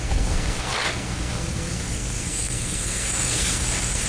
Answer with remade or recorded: remade